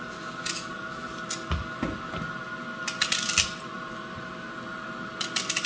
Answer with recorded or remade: recorded